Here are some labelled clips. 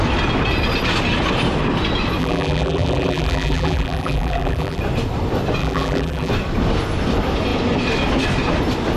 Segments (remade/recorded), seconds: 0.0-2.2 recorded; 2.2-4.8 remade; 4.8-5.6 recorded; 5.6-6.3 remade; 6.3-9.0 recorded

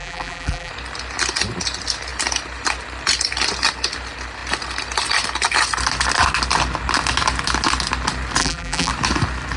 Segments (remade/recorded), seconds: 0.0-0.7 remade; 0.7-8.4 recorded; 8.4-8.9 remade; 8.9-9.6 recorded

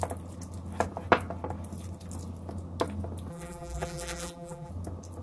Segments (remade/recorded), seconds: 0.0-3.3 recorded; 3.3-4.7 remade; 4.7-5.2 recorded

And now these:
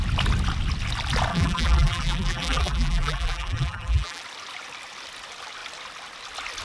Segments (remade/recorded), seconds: 0.0-1.3 recorded; 1.3-4.2 remade; 4.2-6.6 recorded